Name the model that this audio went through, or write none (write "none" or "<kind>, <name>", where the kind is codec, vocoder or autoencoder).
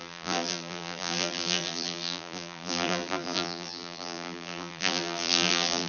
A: vocoder, BigVGAN v2